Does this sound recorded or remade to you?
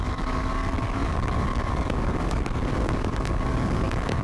remade